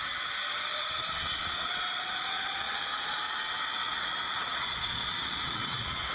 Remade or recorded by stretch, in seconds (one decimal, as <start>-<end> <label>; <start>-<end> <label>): 0.0-0.7 recorded; 0.7-3.2 remade; 3.2-3.8 recorded; 3.8-6.1 remade